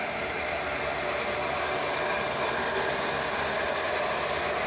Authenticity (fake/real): real